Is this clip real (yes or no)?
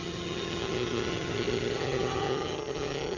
no